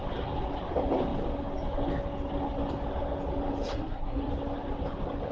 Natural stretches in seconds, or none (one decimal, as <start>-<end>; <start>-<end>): 0.0-3.7; 4.3-5.3